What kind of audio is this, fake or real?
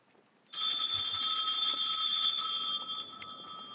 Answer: real